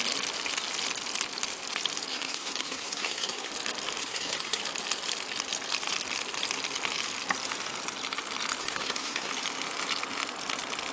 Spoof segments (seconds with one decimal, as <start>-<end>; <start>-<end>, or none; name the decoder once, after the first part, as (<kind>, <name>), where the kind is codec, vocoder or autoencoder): 2.1-3.5 (codec, SNAC); 4.0-4.6; 8.6-9.3